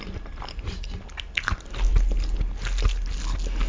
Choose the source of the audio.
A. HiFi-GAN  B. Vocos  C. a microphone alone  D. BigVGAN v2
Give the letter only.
C